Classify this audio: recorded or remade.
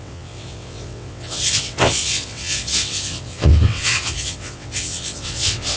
remade